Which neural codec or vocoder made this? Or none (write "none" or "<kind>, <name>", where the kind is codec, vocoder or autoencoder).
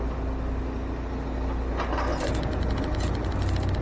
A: none